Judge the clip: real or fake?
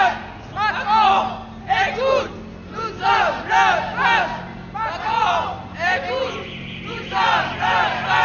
real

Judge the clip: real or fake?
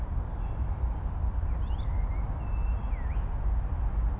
real